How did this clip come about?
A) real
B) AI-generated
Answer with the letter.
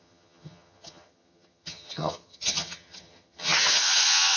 B